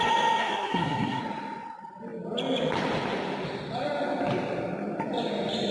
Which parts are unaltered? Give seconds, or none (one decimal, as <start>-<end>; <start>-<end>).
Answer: 0.0-0.4; 1.2-5.7